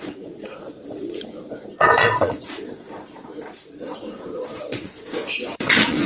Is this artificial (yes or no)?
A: yes